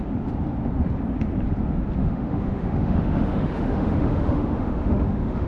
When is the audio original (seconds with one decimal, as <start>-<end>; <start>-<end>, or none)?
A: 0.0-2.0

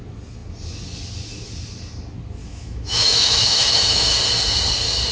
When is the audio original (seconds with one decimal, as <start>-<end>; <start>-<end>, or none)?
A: 0.0-2.4; 4.2-5.1

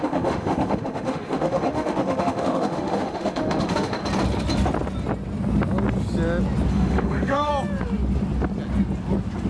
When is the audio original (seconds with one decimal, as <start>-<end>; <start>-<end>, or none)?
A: 4.0-6.7; 7.5-9.5